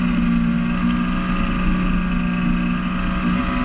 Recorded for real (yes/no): yes